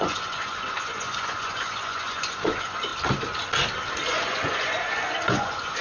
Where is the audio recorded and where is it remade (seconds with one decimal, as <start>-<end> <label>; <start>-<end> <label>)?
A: 0.0-2.9 remade; 2.9-4.1 recorded; 4.1-5.8 remade